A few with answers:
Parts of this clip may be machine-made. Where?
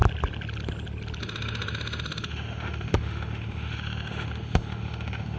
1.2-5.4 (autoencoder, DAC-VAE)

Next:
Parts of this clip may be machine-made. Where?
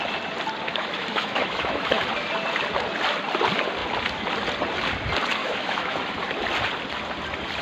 0.7-2.0 (autoencoder, DAC-VAE); 5.4-6.1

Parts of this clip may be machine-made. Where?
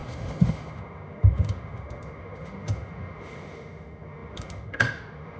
0.0-5.4 (autoencoder, DAC-VAE)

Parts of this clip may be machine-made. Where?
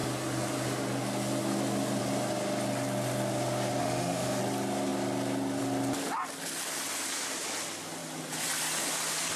3.8-4.4 (autoencoder, DAC-VAE)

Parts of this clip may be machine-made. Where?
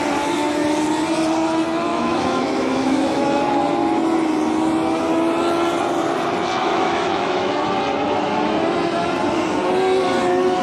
1.9-3.4 (autoencoder, DAC-VAE); 6.6-7.5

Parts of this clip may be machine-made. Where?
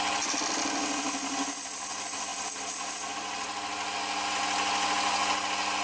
none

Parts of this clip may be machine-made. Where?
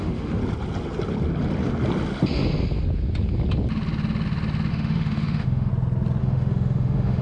0.0-0.4 (autoencoder, DAC-VAE); 4.7-5.7; 6.2-7.2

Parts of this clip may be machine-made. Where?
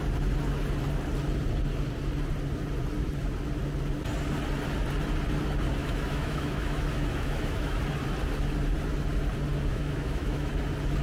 5.8-7.8 (autoencoder, DAC-VAE); 9.7-10.5